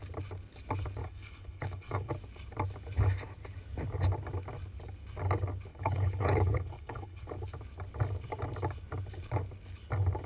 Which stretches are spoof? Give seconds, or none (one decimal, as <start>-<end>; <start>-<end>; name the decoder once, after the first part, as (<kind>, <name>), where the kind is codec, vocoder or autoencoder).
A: 1.0-2.1 (codec, HILCodec); 5.7-7.3